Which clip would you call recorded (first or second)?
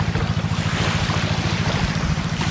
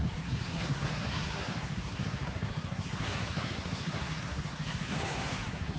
first